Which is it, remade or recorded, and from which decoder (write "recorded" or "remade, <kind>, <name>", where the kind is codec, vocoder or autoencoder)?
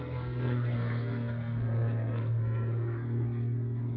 remade, codec, SNAC